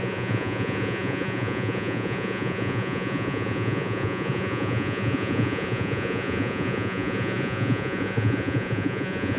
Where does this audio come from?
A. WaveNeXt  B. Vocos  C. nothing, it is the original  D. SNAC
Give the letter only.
B